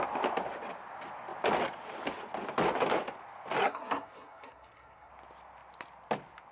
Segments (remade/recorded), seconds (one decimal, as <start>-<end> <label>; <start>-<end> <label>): 0.0-3.6 recorded; 3.6-5.1 remade; 5.1-6.5 recorded